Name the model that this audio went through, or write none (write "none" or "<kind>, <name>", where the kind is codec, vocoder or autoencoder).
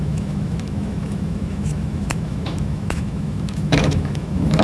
autoencoder, DAC-VAE